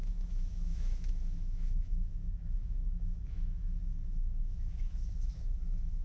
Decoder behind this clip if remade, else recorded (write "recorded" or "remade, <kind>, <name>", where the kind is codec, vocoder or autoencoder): remade, autoencoder, DAC-VAE